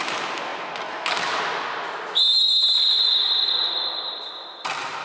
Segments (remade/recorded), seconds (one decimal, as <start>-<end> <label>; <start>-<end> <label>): 0.0-5.0 recorded